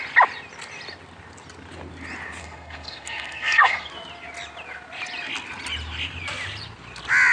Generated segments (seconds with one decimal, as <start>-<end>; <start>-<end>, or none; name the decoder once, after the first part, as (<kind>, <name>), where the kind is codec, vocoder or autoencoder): 2.4-3.9 (codec, SNAC)